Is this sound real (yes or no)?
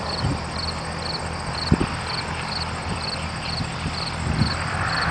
yes